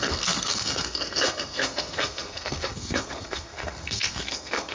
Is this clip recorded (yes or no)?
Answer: no